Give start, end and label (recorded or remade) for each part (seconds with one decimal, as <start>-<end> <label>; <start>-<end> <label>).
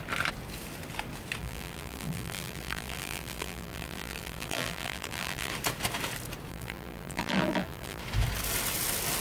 0.0-1.4 recorded; 1.4-5.5 remade; 5.5-6.5 recorded; 6.5-8.0 remade; 8.0-9.2 recorded